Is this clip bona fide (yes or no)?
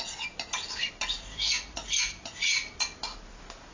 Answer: yes